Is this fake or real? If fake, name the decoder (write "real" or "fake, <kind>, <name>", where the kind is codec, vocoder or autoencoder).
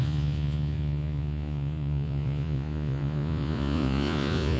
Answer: fake, vocoder, Vocos